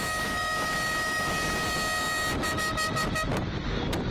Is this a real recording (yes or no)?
yes